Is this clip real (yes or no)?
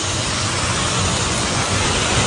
no